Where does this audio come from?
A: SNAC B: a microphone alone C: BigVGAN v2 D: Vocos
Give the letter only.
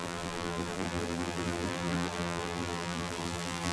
C